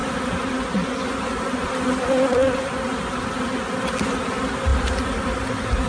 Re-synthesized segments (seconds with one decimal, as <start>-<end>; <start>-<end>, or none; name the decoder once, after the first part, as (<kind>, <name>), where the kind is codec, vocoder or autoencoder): 0.0-0.6 (vocoder, BigVGAN v2)